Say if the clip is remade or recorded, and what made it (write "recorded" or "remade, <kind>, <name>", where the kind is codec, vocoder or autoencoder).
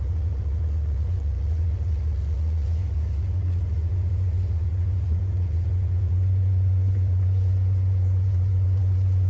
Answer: remade, vocoder, Vocos